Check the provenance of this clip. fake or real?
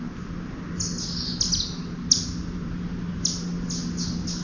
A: real